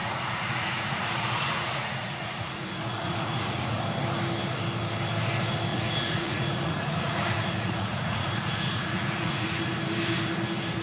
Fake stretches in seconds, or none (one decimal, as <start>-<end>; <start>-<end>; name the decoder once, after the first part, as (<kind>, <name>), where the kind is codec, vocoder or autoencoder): 0.0-3.8 (vocoder, Vocos); 5.7-9.6